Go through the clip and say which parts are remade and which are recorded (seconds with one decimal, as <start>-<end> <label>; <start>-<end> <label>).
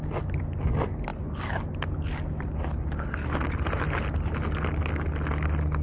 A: 0.0-5.8 recorded